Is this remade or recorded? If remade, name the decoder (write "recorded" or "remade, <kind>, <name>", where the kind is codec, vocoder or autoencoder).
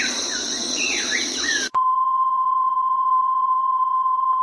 remade, vocoder, Vocos